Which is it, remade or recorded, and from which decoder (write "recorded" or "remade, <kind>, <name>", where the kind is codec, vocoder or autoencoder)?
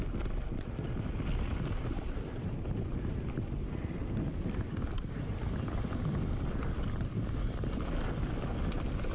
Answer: recorded